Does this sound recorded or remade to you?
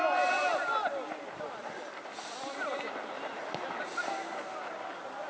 recorded